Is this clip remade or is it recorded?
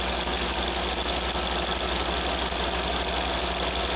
recorded